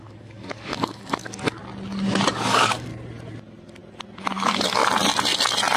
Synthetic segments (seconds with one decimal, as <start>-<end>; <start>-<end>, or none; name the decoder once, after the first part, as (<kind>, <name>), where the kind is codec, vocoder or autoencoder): 0.0-1.6 (codec, DAC); 2.3-2.9; 4.2-4.8